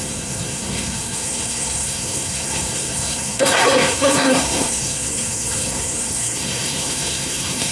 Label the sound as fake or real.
fake